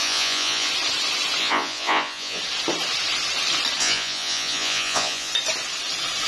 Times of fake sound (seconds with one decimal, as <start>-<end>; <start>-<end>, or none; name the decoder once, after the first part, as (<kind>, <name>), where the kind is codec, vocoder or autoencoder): 0.0-0.7 (vocoder, Vocos); 1.4-2.4; 3.8-5.3